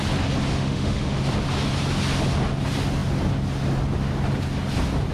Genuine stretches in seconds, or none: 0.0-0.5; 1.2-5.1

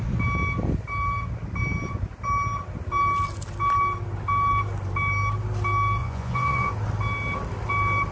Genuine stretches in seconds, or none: 0.0-6.0; 6.7-8.1

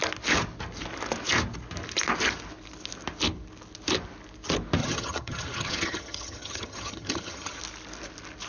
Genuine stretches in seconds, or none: 0.0-4.8; 7.6-8.5

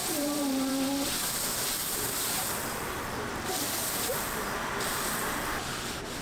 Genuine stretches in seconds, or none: 0.7-1.5; 5.0-6.2

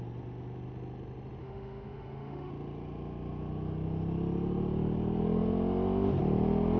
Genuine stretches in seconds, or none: 0.0-1.4; 2.5-6.8